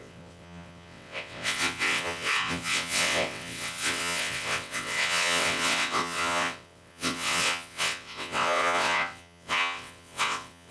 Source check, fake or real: fake